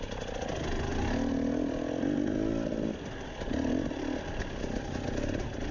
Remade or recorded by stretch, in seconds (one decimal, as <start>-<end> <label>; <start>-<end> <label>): 0.0-5.7 recorded